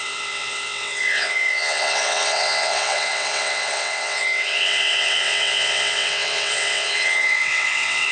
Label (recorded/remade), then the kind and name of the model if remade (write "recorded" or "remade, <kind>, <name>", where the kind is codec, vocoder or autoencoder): remade, vocoder, WaveNeXt